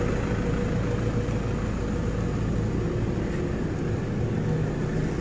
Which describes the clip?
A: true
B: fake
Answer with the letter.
A